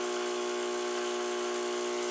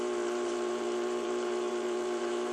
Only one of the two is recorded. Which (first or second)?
first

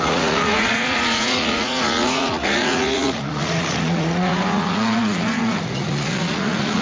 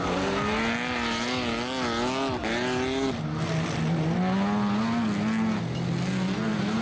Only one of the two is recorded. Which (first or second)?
second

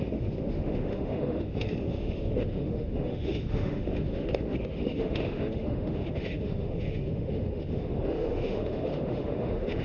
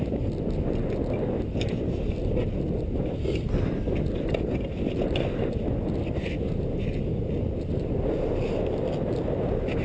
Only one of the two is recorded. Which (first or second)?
second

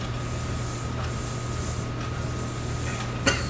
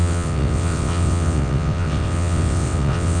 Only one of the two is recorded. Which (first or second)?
first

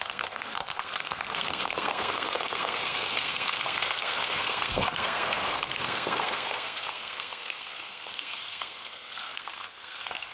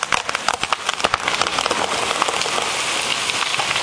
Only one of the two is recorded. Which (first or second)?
second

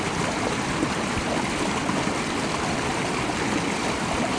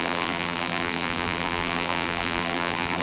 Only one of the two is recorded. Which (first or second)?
first